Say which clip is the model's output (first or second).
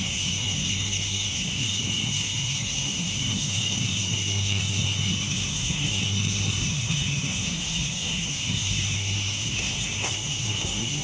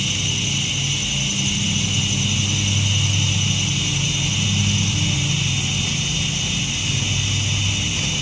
first